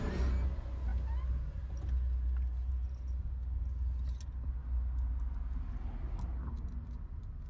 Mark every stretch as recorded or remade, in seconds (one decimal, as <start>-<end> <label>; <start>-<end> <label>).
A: 0.0-7.5 recorded